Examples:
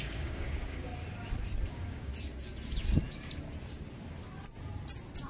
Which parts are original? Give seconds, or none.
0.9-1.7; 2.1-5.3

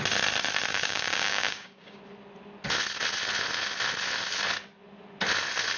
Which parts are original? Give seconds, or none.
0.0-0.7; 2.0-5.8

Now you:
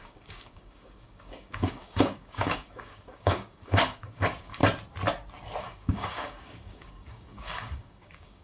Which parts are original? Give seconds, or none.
4.6-5.6